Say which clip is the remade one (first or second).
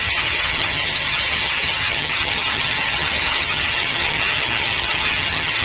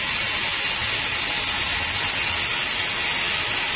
first